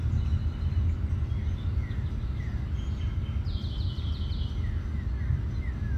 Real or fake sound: real